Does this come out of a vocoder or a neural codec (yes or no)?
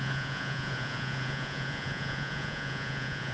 yes